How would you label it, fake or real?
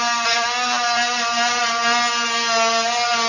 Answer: real